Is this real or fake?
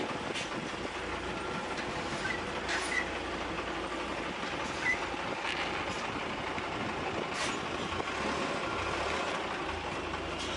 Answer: real